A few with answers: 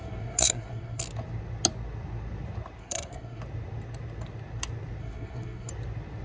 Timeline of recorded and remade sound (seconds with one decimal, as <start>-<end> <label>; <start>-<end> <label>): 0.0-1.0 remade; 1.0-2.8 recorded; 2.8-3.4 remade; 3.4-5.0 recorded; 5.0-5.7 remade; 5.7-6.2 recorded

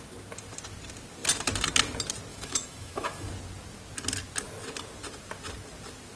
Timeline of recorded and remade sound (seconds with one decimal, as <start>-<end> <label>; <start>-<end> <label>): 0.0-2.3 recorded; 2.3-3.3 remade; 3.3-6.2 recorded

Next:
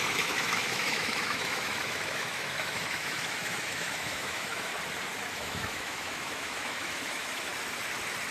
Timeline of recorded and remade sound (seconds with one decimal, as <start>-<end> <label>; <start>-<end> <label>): 0.0-4.7 remade; 4.7-5.3 recorded; 5.3-7.5 remade; 7.5-8.3 recorded

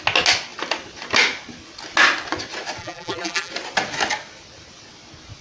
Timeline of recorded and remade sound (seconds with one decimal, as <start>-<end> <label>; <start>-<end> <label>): 0.0-2.8 recorded; 2.8-3.5 remade; 3.5-5.4 recorded

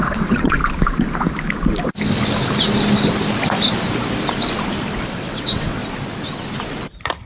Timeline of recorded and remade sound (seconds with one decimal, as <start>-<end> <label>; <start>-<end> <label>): 0.0-0.6 remade; 0.6-5.0 recorded; 5.0-5.8 remade; 5.8-7.3 recorded